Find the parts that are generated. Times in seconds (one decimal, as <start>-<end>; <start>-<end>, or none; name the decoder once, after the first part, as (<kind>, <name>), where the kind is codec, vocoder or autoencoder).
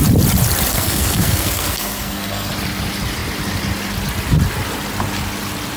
0.7-2.5 (codec, SNAC)